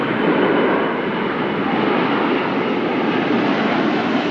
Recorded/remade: recorded